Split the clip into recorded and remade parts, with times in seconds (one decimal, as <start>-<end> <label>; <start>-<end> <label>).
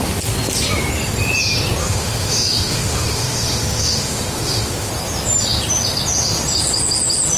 0.0-1.8 recorded; 1.8-4.9 remade; 4.9-7.4 recorded